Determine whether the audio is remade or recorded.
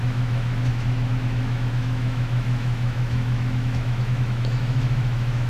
remade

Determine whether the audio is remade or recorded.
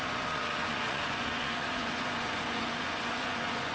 remade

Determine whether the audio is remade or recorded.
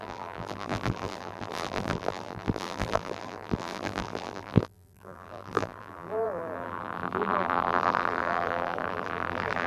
remade